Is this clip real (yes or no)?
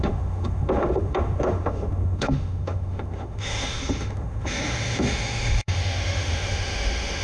no